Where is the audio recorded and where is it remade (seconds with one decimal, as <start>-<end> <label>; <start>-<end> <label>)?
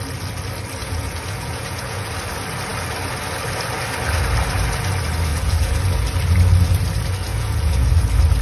0.0-0.8 recorded; 0.8-2.1 remade; 2.1-5.3 recorded; 5.3-5.8 remade; 5.8-7.3 recorded; 7.3-7.9 remade; 7.9-8.4 recorded